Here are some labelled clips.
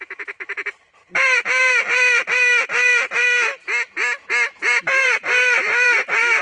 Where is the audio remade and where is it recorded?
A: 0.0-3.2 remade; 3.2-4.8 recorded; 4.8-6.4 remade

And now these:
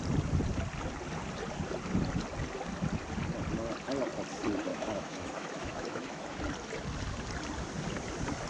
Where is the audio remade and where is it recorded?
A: 0.0-4.7 recorded; 4.7-6.4 remade; 6.4-8.5 recorded

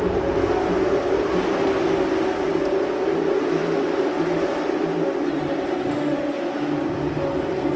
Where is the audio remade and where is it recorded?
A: 0.0-7.8 recorded

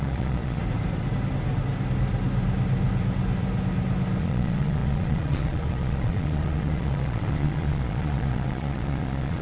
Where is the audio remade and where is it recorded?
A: 0.0-0.6 remade; 0.6-4.2 recorded; 4.2-9.4 remade

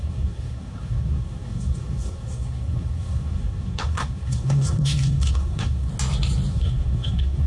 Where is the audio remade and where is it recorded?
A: 0.0-5.9 remade; 5.9-6.5 recorded; 6.5-7.5 remade